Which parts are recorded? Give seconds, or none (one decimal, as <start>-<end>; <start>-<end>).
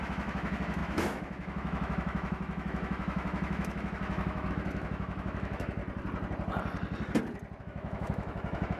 5.8-7.6